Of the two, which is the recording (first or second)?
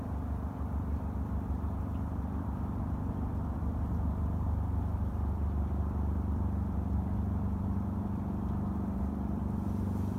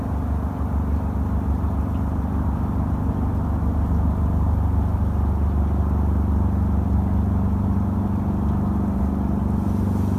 second